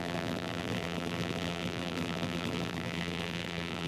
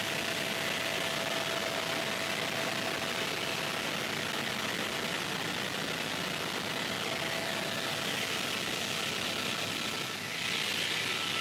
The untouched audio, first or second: second